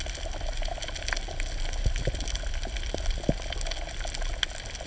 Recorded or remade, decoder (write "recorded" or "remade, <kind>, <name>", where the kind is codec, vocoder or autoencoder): recorded